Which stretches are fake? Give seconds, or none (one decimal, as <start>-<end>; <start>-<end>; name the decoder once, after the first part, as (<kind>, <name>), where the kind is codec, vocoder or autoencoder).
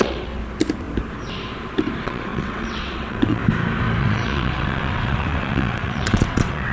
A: 0.0-0.4 (vocoder, WaveNeXt); 2.0-3.4; 4.0-6.7